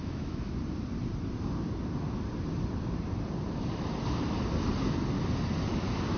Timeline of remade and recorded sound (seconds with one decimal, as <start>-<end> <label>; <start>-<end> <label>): 0.0-0.5 remade; 0.5-6.2 recorded